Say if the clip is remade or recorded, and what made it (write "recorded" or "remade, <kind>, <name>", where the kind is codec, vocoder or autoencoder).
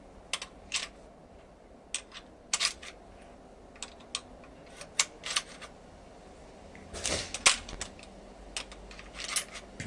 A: recorded